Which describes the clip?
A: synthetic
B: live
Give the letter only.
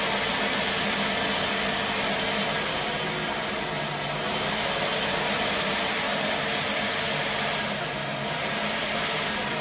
B